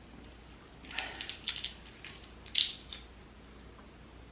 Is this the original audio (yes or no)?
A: yes